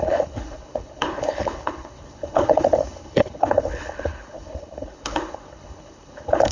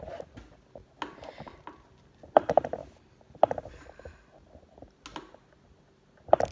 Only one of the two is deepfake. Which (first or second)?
first